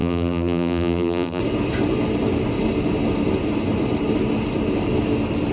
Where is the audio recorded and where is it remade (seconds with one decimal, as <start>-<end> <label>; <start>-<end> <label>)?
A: 0.0-1.4 remade; 1.4-5.5 recorded